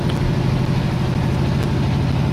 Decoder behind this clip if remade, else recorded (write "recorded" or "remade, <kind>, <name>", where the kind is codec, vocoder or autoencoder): recorded